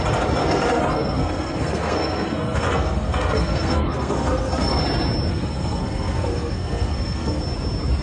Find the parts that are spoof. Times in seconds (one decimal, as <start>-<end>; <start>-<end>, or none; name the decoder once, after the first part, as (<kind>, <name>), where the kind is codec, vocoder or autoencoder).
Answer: 0.4-4.8 (codec, SNAC); 5.3-7.4